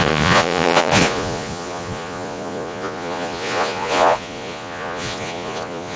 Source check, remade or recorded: remade